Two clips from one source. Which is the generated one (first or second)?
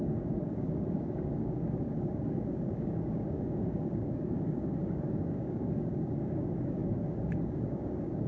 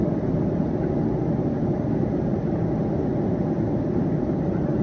first